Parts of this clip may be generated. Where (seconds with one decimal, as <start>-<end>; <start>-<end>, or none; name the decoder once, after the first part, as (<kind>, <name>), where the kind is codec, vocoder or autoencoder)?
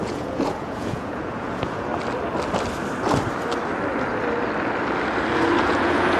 0.0-1.9 (vocoder, Vocos); 5.6-6.2